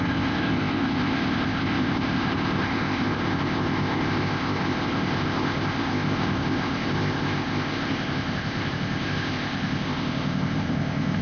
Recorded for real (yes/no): no